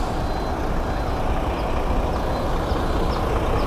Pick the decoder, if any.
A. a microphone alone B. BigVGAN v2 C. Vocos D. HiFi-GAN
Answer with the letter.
A